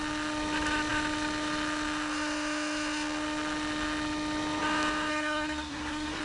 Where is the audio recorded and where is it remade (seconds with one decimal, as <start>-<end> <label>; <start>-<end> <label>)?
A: 0.0-5.1 recorded; 5.1-6.2 remade